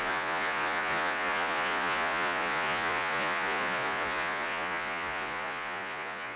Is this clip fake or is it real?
fake